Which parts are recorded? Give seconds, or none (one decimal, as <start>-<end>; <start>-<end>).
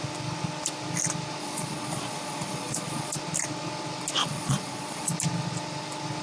0.0-1.4; 3.1-4.2; 5.1-6.2